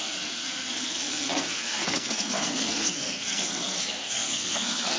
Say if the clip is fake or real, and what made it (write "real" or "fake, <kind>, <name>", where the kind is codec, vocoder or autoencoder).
fake, codec, SNAC